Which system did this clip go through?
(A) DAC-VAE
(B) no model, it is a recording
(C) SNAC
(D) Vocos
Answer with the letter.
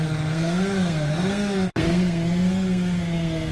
C